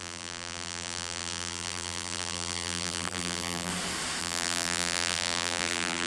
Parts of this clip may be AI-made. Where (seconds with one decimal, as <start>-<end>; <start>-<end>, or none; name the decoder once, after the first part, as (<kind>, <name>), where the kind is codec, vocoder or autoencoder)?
0.0-3.7 (vocoder, BigVGAN v2); 4.2-6.1

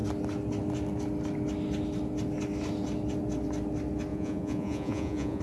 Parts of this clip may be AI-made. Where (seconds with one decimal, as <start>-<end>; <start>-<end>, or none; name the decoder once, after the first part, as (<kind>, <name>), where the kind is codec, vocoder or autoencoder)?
4.1-5.4 (vocoder, Vocos)

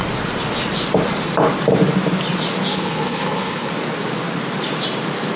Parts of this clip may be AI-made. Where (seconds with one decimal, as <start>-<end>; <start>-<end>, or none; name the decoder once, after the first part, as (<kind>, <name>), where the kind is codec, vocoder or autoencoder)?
2.7-3.7 (codec, HILCodec)

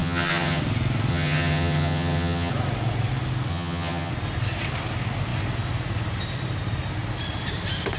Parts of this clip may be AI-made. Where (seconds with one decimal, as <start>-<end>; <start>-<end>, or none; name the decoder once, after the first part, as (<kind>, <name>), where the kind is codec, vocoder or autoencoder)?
0.0-0.6 (vocoder, HiFi-GAN); 1.1-2.5; 3.5-4.1